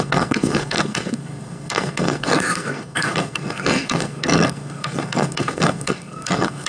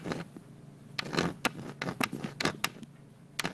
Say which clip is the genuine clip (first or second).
second